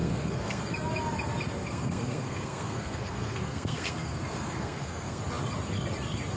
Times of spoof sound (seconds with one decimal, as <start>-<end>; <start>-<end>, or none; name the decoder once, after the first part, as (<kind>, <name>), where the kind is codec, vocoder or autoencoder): 0.0-0.6 (codec, SNAC); 1.6-5.2